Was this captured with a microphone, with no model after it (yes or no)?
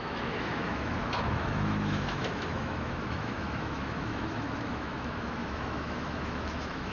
no